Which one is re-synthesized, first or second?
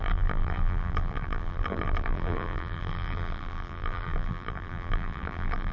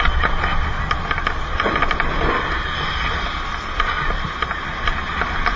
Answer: first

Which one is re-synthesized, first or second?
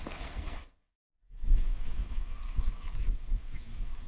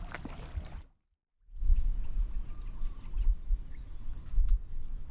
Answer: first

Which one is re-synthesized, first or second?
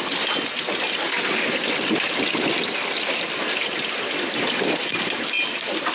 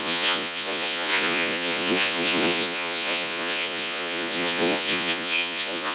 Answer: second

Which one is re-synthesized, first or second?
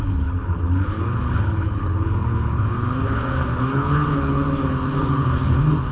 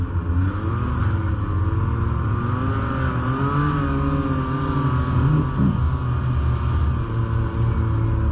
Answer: first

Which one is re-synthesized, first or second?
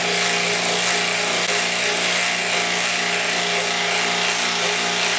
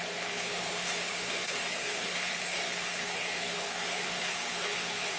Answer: second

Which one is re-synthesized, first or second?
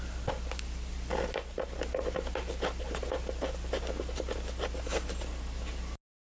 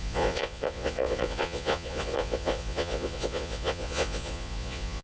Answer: second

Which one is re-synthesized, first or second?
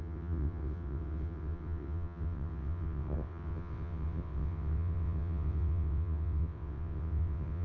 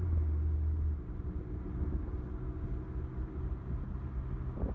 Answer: first